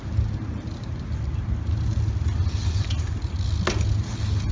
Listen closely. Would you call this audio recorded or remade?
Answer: recorded